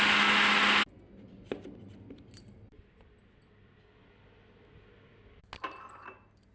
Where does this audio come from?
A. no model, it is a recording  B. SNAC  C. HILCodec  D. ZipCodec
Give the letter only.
A